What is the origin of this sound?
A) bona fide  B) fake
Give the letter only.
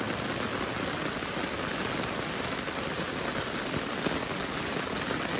A